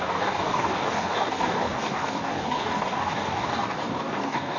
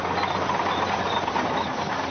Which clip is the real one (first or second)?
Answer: second